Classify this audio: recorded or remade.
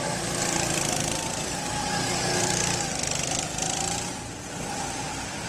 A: remade